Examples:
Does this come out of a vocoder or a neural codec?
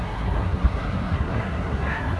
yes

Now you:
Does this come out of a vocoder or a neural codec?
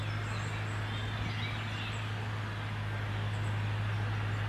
no